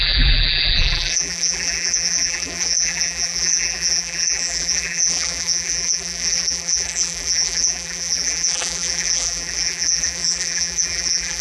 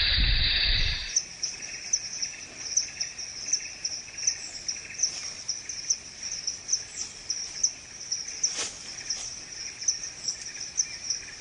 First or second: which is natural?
second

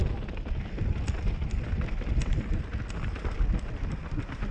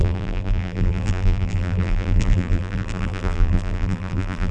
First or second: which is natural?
first